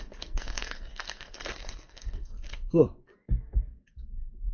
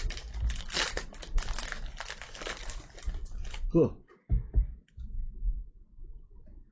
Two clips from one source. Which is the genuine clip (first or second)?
second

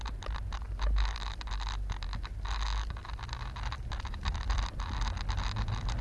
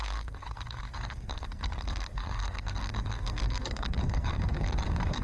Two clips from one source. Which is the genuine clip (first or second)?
first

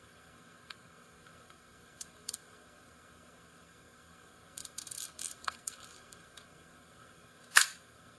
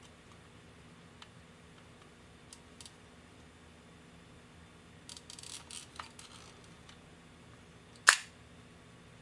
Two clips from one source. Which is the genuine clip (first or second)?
second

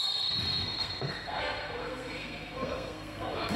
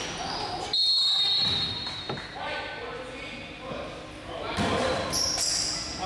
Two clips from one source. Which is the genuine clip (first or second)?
second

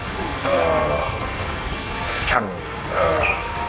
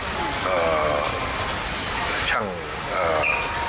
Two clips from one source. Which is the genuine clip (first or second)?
second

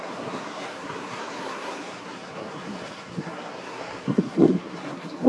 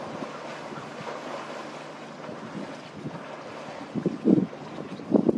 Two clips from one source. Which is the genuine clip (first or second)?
second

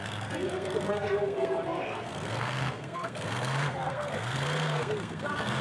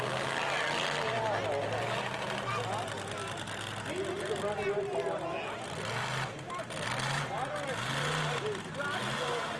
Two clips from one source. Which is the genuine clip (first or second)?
second